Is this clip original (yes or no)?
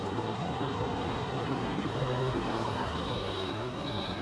no